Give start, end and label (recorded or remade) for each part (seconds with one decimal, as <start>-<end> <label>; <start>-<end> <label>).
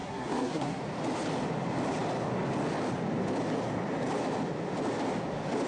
0.0-0.8 remade; 0.8-5.7 recorded